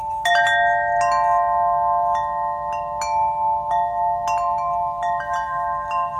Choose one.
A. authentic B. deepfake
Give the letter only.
A